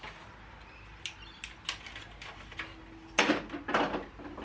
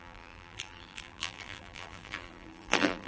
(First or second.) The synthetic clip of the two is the second